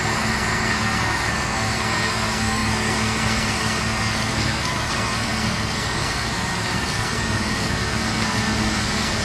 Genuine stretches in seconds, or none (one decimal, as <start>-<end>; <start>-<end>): none